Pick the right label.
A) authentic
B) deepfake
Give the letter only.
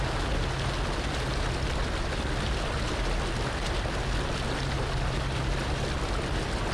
A